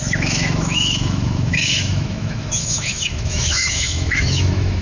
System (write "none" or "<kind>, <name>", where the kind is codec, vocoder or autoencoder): autoencoder, DAC-VAE